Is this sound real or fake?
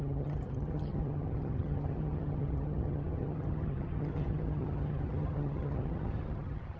fake